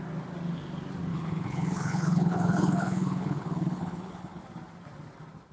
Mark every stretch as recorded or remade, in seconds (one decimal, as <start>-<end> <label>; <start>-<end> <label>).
0.0-1.1 recorded; 1.1-4.4 remade; 4.4-5.5 recorded